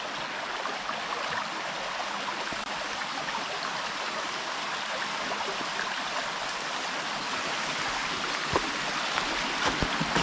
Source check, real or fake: real